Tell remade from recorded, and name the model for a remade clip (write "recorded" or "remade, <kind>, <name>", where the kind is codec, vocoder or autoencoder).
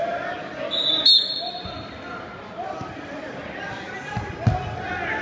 recorded